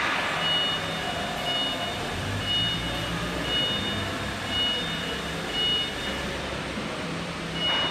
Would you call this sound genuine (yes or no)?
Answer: yes